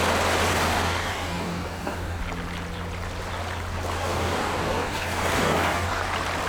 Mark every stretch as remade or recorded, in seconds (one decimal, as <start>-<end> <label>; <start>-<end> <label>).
0.0-0.5 recorded; 0.5-2.2 remade; 2.2-4.0 recorded; 4.0-6.0 remade; 6.0-6.5 recorded